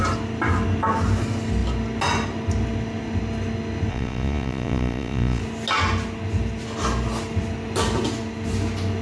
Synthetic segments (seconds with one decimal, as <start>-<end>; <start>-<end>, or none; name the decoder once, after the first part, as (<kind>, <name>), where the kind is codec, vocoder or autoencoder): 3.9-5.4 (vocoder, Vocos)